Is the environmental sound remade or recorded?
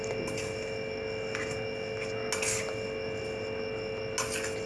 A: recorded